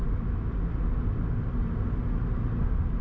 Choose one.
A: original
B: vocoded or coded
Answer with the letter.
A